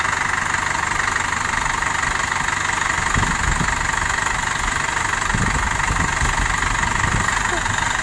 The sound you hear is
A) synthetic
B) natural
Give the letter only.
B